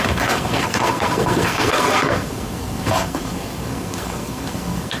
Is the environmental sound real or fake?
fake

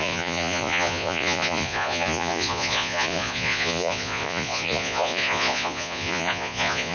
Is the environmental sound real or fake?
fake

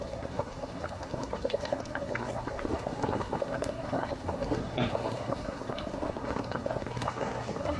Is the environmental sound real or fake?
fake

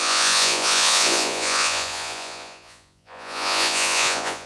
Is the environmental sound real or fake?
fake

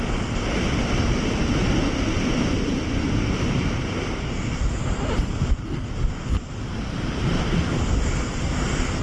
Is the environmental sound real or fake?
real